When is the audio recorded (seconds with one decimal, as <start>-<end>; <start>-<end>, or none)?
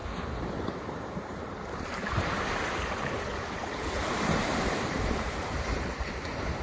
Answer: none